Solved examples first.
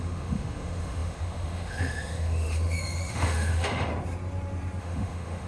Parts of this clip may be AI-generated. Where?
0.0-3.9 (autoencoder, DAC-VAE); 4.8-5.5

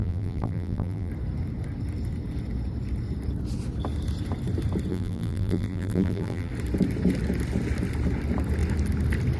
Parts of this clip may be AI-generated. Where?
0.0-1.1 (vocoder, BigVGAN v2); 4.9-6.5

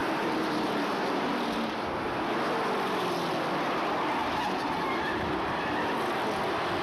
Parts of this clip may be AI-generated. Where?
0.0-1.3 (vocoder, BigVGAN v2); 4.2-5.3

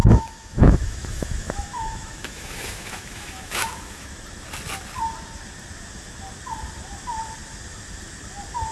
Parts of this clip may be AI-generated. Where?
0.0-4.1 (autoencoder, DAC-VAE)

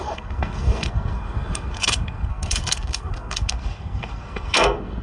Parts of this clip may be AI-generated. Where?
0.0-5.0 (codec, SNAC)

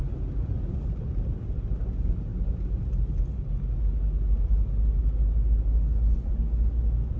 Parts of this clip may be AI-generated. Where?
none